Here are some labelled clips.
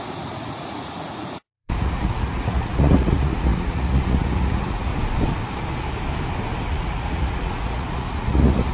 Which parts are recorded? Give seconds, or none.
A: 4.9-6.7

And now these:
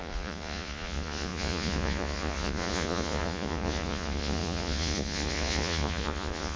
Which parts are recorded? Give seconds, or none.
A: none

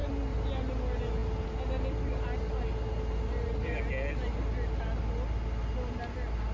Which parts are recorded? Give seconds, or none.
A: 0.0-6.5